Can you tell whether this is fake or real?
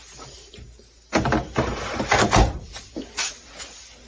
real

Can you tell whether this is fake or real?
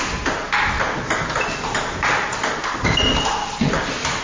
real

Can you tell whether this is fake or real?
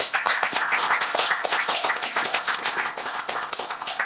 fake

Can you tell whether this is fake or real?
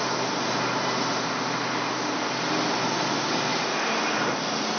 real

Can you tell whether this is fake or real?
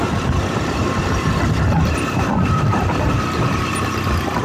fake